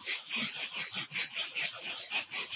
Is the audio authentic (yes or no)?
yes